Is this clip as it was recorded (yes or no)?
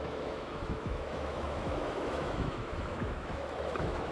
no